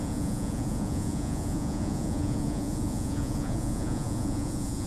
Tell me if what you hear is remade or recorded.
remade